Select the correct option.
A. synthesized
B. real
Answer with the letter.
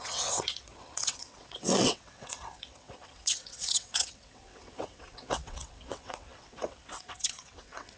A